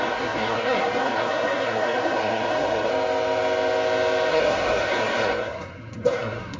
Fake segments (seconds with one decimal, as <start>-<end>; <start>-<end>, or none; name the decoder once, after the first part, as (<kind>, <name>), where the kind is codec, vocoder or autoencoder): 0.0-2.9 (codec, SNAC); 4.3-6.6